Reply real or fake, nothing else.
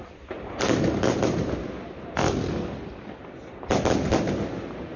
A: real